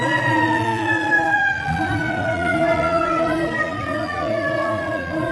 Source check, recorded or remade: remade